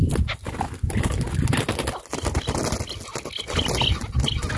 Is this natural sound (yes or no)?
yes